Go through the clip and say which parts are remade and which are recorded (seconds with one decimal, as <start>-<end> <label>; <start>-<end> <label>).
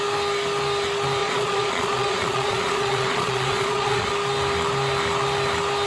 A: 0.0-1.2 recorded; 1.2-4.1 remade; 4.1-5.9 recorded